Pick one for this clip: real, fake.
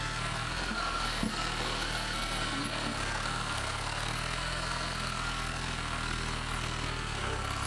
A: fake